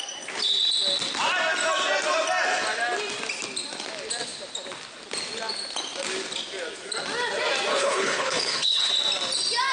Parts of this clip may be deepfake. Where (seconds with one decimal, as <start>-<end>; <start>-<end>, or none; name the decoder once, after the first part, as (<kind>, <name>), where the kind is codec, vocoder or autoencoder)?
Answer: 7.7-8.9 (codec, HILCodec)